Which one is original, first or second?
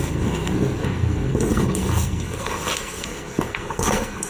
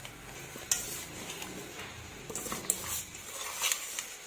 second